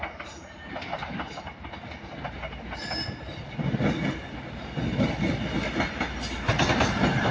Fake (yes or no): no